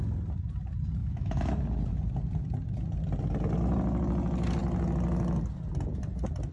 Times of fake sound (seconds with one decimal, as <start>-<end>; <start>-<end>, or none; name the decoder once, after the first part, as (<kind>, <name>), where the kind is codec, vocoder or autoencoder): 1.0-1.5 (autoencoder, DAC-VAE)